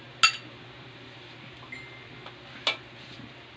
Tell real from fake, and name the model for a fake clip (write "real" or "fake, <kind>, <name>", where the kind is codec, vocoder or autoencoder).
real